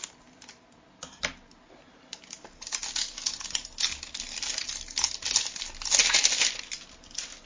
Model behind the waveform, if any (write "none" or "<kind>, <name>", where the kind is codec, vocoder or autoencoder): none